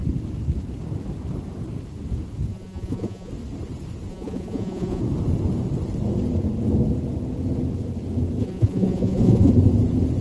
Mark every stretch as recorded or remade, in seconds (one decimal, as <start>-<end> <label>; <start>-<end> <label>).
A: 0.0-2.5 recorded; 2.5-3.3 remade; 3.3-4.1 recorded; 4.1-5.0 remade; 5.0-8.4 recorded; 8.4-9.5 remade; 9.5-10.2 recorded